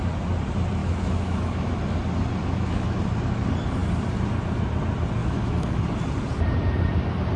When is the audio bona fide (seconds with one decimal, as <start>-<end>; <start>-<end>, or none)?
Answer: 0.0-0.8; 1.8-2.4; 3.0-5.2; 5.8-7.4